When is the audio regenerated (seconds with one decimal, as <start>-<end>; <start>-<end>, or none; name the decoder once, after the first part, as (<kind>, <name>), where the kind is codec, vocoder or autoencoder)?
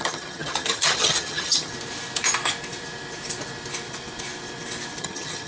0.0-1.7 (vocoder, HiFi-GAN); 5.0-5.5